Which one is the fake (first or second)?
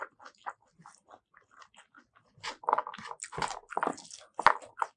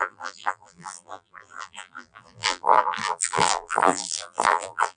second